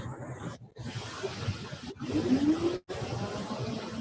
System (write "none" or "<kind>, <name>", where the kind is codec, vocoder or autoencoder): none